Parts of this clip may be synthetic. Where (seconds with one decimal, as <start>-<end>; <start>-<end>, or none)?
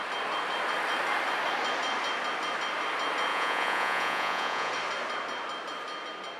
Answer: 3.3-4.7